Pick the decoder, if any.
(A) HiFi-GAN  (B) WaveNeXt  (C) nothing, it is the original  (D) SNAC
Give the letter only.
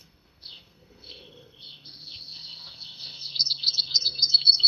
D